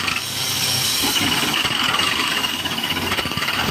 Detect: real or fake fake